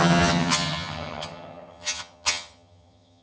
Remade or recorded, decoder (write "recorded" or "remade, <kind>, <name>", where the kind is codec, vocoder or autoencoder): remade, vocoder, HiFi-GAN